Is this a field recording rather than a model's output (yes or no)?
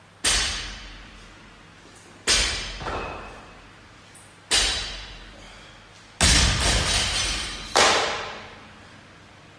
yes